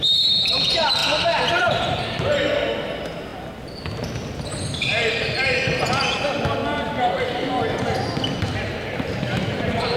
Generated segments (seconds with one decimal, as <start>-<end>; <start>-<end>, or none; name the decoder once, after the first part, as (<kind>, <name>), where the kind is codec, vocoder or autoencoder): 0.0-1.0 (vocoder, BigVGAN v2); 1.6-3.3; 8.4-10.0